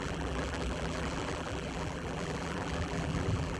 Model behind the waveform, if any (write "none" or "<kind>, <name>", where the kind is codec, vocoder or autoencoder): vocoder, BigVGAN v2